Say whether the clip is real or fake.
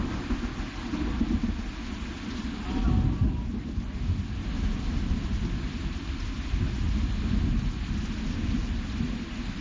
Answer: real